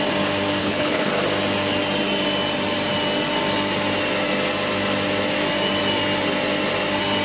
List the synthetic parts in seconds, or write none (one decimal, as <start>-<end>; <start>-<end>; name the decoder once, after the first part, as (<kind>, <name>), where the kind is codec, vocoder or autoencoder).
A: 0.6-1.1 (codec, HILCodec)